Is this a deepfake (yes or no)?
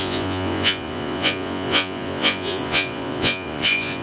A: yes